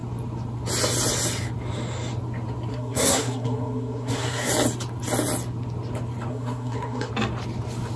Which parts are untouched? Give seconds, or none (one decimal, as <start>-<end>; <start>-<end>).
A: 0.0-2.7; 4.5-6.3; 7.1-8.0